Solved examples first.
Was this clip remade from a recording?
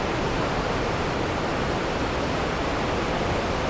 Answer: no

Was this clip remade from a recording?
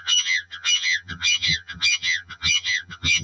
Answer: yes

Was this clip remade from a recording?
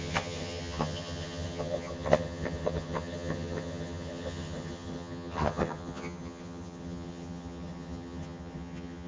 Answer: yes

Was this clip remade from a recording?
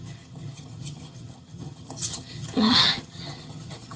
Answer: yes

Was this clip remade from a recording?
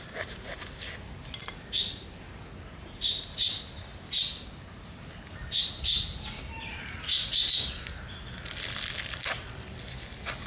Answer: no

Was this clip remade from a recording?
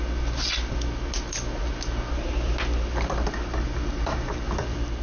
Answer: no